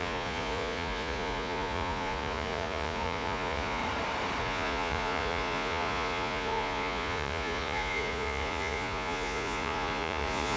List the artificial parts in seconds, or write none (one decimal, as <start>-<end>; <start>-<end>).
0.0-3.8; 4.4-10.6